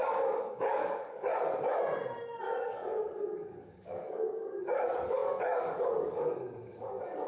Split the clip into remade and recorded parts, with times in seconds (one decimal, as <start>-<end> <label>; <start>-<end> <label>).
0.0-1.3 remade; 1.3-2.4 recorded; 2.4-7.3 remade